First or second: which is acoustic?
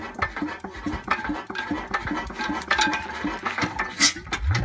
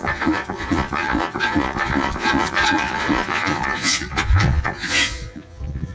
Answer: first